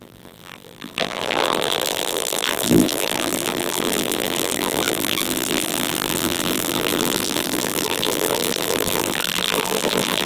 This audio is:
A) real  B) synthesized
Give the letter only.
B